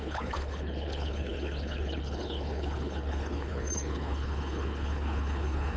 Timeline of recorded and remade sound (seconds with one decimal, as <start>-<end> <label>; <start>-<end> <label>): 0.0-5.8 remade